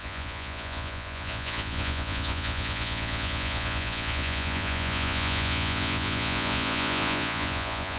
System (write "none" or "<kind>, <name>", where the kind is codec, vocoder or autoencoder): vocoder, Vocos